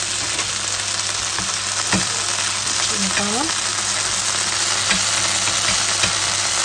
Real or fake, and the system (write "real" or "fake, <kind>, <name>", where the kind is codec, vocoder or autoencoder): real